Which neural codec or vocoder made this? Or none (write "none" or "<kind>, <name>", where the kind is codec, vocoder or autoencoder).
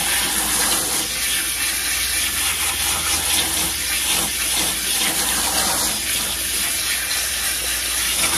none